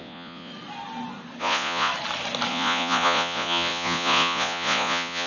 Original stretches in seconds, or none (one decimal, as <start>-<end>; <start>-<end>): 0.5-1.4; 1.9-2.5